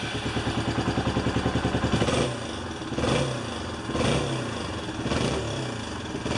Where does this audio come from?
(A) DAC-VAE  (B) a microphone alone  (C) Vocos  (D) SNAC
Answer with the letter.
B